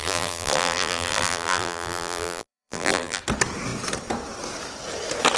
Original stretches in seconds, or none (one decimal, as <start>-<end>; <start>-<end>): 3.2-5.4